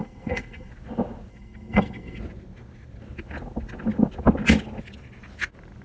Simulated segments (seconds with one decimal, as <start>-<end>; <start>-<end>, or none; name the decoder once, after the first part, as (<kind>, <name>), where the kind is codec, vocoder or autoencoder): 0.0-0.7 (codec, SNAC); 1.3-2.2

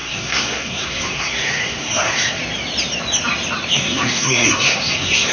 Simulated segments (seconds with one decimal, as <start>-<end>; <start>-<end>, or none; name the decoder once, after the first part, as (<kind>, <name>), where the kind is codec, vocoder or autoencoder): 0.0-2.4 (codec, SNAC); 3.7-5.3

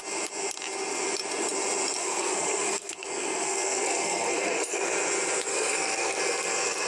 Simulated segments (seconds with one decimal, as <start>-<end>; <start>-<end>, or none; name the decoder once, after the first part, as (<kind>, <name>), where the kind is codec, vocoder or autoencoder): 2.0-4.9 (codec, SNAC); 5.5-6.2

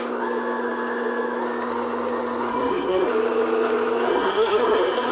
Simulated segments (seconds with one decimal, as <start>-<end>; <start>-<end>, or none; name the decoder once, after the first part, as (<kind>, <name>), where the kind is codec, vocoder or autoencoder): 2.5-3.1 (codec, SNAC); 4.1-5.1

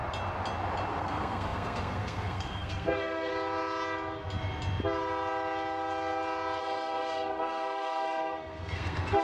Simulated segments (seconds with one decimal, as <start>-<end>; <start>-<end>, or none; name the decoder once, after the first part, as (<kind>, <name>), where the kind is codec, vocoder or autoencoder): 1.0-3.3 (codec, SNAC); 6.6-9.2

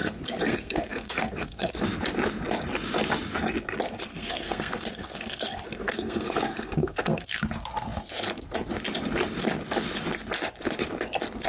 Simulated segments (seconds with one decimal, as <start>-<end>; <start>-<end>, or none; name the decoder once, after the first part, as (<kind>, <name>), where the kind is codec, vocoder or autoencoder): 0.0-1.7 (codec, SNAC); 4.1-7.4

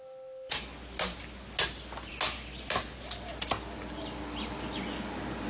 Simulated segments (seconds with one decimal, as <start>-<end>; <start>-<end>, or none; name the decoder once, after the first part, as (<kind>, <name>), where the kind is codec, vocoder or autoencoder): none

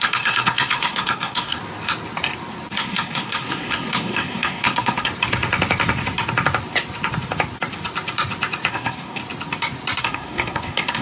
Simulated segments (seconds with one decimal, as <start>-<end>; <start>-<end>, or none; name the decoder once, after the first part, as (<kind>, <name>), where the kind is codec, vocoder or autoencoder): 0.0-1.6 (codec, SNAC); 2.8-5.1; 8.7-9.2; 10.0-11.0